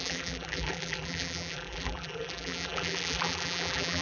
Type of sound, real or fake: fake